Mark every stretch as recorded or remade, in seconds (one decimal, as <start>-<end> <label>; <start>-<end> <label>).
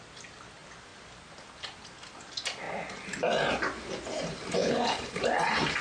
0.0-4.6 recorded; 4.6-5.2 remade; 5.2-5.8 recorded